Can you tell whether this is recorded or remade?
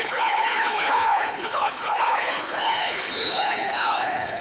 remade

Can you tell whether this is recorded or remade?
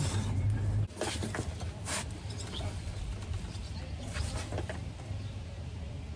recorded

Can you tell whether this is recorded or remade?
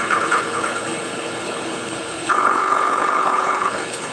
remade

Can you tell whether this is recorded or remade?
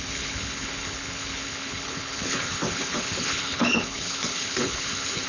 remade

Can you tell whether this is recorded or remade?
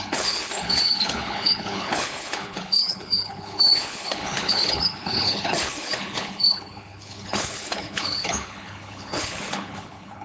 remade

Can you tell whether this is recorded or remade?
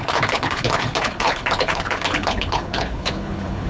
remade